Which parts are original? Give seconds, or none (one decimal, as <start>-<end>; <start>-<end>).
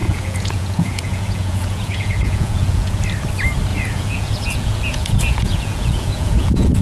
3.0-3.7